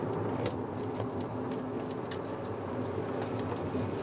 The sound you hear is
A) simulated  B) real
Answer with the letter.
B